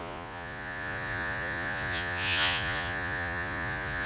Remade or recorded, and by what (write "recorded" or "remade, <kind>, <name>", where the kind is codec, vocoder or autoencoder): remade, vocoder, Vocos